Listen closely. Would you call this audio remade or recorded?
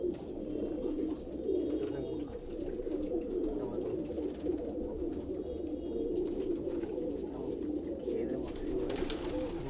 recorded